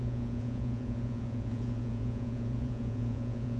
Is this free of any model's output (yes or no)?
no